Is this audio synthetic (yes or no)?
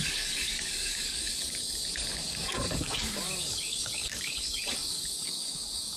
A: yes